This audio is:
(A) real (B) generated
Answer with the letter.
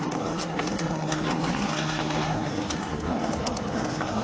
B